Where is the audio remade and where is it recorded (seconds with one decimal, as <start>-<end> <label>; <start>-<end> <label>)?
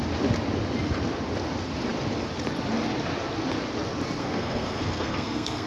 0.0-4.2 recorded; 4.2-5.7 remade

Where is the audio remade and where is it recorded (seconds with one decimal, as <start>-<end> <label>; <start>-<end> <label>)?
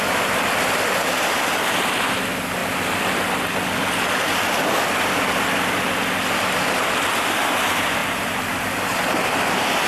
0.0-9.9 recorded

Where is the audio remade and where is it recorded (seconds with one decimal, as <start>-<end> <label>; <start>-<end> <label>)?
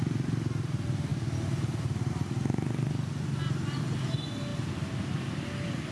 0.0-5.9 recorded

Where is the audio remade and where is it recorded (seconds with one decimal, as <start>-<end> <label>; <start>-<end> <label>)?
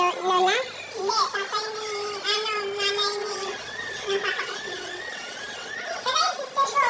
0.0-3.2 recorded; 3.2-6.2 remade; 6.2-6.9 recorded